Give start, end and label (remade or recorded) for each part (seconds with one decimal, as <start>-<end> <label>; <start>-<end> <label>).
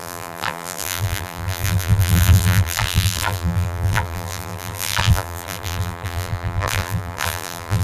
0.0-7.8 remade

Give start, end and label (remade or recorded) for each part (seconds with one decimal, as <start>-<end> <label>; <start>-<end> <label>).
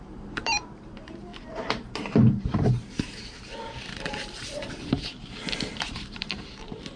0.0-5.1 remade; 5.1-5.7 recorded; 5.7-7.0 remade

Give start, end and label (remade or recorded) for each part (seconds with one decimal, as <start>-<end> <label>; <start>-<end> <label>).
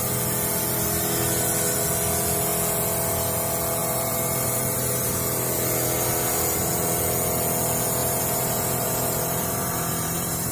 0.0-3.8 recorded; 3.8-5.1 remade; 5.1-8.0 recorded; 8.0-10.5 remade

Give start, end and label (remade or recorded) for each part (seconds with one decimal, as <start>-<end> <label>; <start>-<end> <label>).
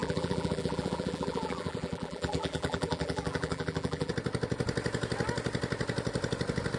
0.0-4.1 remade; 4.1-6.8 recorded